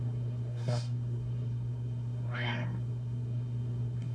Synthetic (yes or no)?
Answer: yes